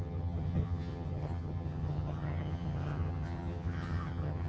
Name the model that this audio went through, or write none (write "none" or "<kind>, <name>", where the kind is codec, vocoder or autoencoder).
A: vocoder, HiFi-GAN